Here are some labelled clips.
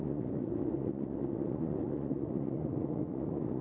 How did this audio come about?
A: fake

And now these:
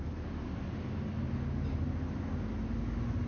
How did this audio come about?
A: real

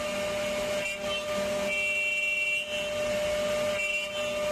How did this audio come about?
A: real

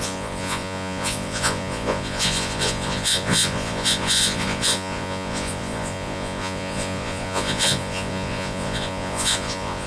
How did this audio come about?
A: fake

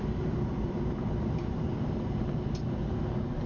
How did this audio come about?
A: real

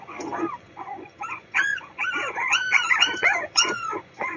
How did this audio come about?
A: fake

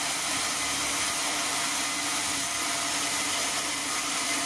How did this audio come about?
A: real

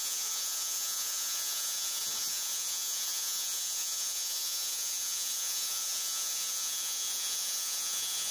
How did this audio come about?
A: fake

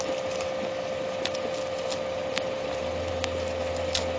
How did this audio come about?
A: real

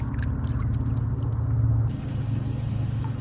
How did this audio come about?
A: real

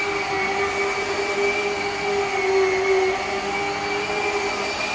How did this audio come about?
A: real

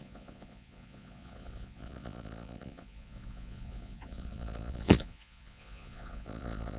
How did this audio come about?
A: fake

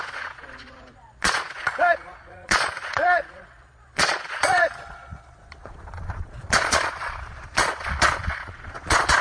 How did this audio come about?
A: fake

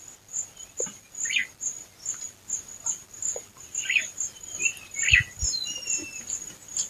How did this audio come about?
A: real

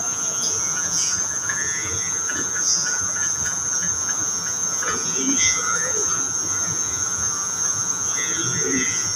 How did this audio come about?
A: fake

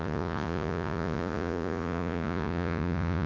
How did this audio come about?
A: fake